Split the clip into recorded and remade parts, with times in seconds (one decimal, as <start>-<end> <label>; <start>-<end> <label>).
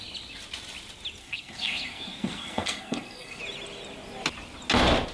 0.0-1.2 recorded; 1.2-3.4 remade; 3.4-5.1 recorded